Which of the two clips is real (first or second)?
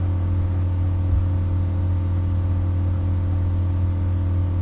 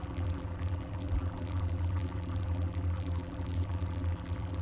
first